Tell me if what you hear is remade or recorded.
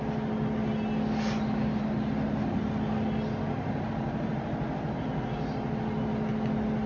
recorded